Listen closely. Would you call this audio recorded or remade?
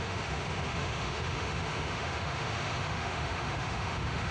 remade